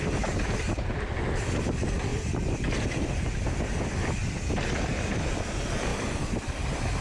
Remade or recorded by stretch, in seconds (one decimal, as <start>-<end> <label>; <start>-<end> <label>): 0.0-2.1 recorded; 2.1-5.4 remade; 5.4-5.9 recorded; 5.9-6.6 remade; 6.6-7.0 recorded